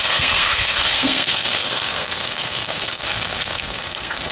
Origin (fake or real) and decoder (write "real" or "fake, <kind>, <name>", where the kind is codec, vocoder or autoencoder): fake, codec, SNAC